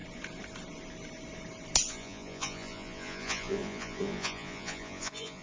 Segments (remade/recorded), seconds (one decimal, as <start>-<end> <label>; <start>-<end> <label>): 0.0-1.9 recorded; 1.9-5.4 remade